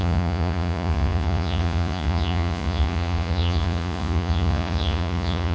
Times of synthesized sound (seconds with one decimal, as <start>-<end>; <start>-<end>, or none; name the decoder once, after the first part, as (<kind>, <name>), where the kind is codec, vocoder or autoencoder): 0.0-5.5 (vocoder, Vocos)